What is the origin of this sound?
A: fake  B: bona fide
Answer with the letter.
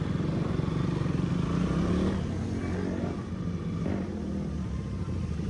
B